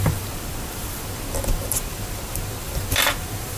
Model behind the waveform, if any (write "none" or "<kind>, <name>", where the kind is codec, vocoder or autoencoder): vocoder, BigVGAN v2